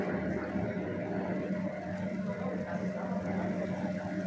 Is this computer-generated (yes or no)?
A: no